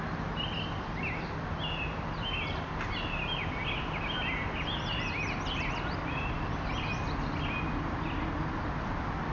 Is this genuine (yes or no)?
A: yes